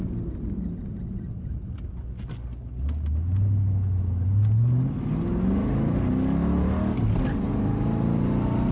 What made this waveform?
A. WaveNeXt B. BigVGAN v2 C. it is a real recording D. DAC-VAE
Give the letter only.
C